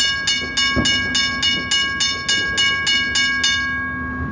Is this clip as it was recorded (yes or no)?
yes